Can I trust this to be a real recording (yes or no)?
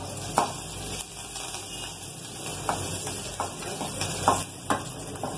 yes